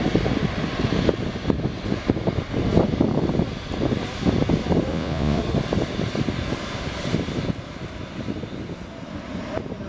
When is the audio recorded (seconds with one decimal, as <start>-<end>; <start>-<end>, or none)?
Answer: 0.0-4.9; 5.4-9.9